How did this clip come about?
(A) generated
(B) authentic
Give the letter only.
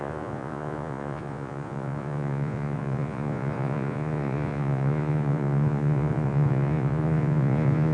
A